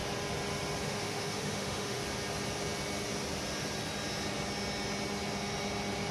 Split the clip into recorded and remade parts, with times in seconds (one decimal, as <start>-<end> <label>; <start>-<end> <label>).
0.0-0.8 recorded; 0.8-2.0 remade; 2.0-6.1 recorded